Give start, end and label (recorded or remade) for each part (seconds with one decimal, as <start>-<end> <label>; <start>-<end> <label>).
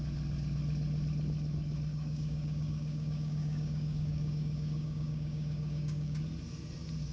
0.0-1.9 recorded; 1.9-6.2 remade; 6.2-7.1 recorded